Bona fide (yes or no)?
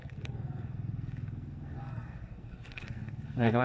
no